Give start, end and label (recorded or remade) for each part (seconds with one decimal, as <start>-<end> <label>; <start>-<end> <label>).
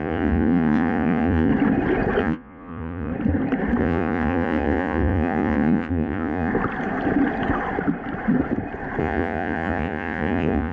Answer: 0.0-1.5 remade; 1.5-2.2 recorded; 2.2-3.1 remade; 3.1-3.8 recorded; 3.8-6.5 remade; 6.5-9.0 recorded; 9.0-10.7 remade